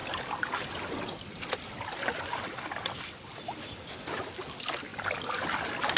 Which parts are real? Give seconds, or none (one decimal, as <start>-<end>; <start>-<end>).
0.0-6.0